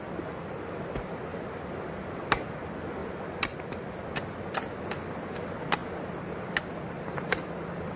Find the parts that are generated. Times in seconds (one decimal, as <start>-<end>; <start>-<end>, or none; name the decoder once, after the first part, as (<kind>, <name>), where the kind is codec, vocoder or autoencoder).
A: none